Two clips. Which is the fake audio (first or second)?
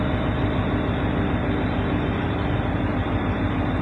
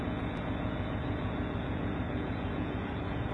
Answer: second